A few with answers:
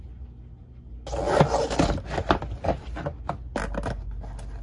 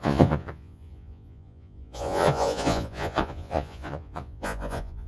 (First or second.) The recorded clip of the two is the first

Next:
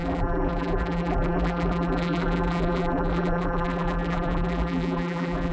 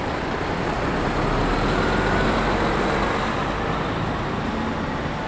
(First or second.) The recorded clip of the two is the second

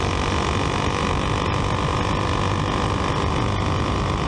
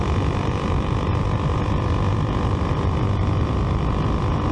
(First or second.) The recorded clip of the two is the first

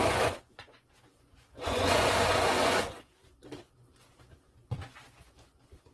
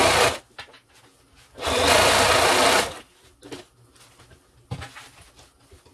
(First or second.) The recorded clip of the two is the second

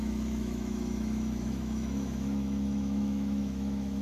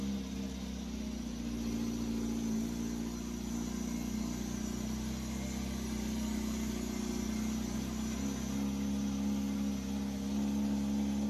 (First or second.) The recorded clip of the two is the second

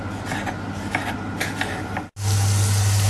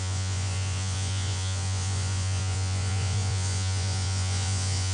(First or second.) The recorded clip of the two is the first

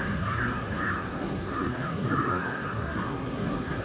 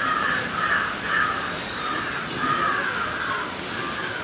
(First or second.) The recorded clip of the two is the second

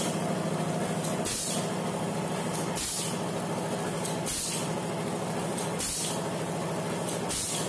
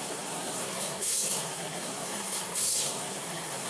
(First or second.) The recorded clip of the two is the first